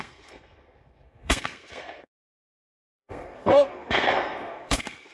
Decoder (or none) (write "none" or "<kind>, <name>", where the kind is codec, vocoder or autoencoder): codec, SNAC